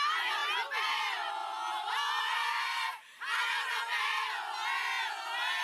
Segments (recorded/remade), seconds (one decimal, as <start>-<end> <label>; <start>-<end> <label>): 0.0-5.6 recorded